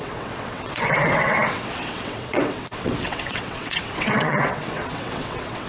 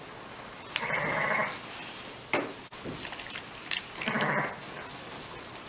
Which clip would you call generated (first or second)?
first